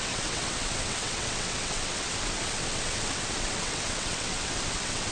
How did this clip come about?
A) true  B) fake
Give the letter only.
B